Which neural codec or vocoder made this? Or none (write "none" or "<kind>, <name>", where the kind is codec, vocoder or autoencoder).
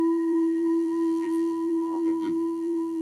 vocoder, BigVGAN v2